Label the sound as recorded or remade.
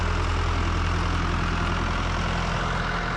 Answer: recorded